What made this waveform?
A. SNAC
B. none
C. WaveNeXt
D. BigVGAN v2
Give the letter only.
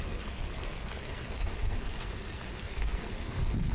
A